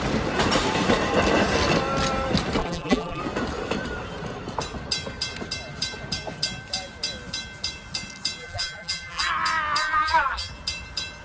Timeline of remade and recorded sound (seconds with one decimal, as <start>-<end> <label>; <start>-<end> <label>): 0.0-2.6 recorded; 2.6-3.2 remade; 3.2-8.4 recorded; 8.4-9.3 remade; 9.3-9.8 recorded; 9.8-10.5 remade; 10.5-11.2 recorded